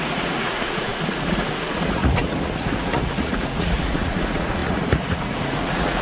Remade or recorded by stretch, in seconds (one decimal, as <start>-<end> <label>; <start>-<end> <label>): 0.0-6.0 remade